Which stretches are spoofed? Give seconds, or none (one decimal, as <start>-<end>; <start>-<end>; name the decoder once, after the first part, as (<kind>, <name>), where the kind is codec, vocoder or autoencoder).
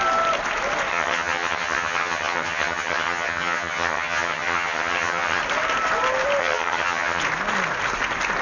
0.9-5.4 (vocoder, HiFi-GAN); 6.4-7.2